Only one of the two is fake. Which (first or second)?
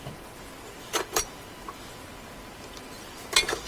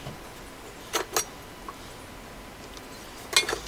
first